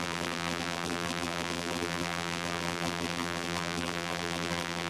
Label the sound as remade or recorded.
remade